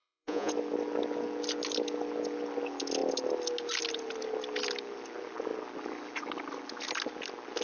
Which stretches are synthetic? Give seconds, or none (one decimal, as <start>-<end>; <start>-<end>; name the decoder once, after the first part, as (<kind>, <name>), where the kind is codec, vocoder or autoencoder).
0.0-0.5 (vocoder, Vocos)